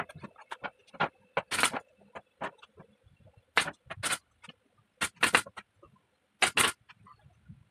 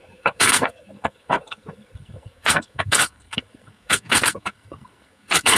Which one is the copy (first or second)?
second